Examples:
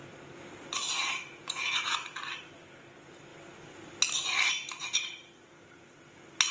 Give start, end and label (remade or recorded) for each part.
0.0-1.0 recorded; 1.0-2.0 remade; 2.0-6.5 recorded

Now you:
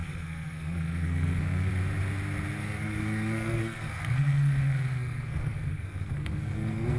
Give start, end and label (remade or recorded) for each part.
0.0-1.7 remade; 1.7-2.6 recorded; 2.6-7.0 remade